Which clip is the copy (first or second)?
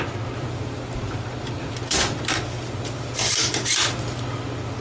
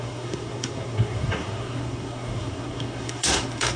second